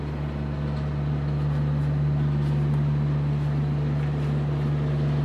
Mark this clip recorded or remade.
recorded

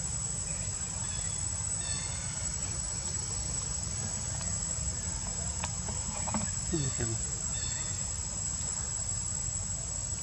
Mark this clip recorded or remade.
recorded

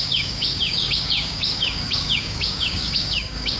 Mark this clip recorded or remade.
remade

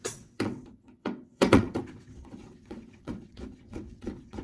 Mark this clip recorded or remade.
remade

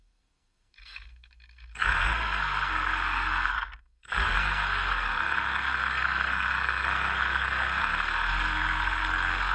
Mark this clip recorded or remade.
remade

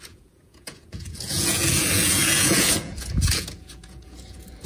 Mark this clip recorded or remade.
remade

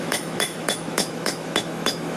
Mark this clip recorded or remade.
remade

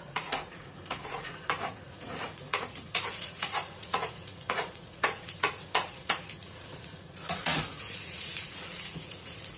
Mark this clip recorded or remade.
remade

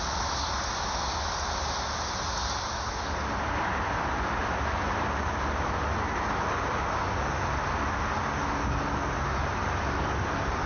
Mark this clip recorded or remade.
recorded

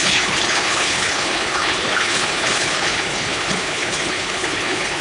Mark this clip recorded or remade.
remade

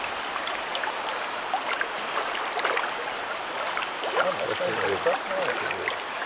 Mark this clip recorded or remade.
recorded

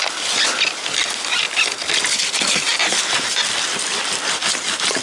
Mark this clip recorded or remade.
recorded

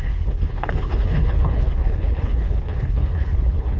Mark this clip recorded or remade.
remade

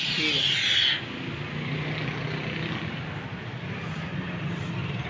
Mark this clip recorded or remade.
recorded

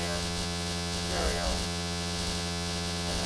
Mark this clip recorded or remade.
remade